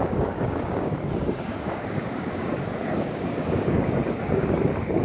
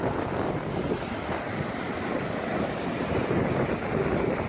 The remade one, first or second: first